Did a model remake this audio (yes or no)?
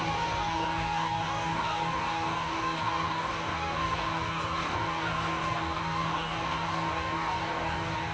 yes